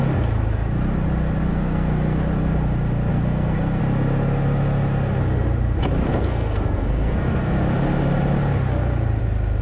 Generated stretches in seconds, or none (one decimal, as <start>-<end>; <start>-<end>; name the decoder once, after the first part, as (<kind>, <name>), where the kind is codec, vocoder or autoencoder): 1.5-2.2 (codec, SNAC); 3.1-3.8; 6.1-7.6